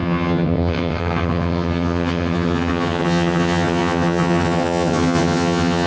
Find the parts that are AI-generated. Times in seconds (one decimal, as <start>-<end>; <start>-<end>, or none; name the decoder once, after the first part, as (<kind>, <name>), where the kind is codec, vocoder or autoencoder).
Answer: 0.0-5.9 (vocoder, HiFi-GAN)